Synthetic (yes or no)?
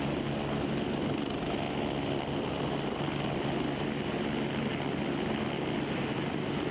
no